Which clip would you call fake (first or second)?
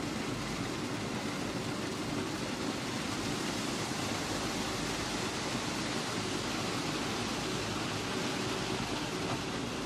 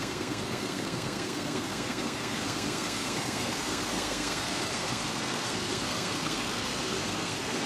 second